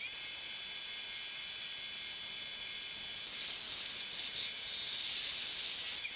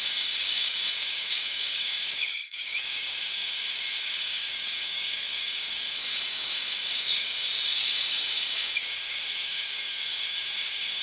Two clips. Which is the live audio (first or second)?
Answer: first